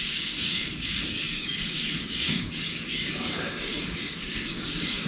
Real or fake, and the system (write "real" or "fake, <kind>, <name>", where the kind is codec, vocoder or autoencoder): fake, codec, DAC